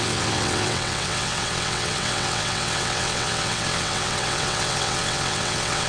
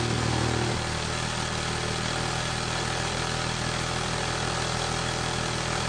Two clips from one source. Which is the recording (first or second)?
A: second